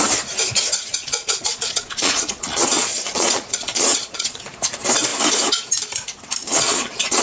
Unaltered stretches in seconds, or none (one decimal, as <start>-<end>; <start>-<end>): 0.0-0.9; 4.5-6.4